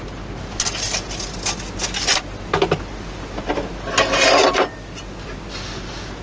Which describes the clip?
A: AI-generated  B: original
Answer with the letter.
B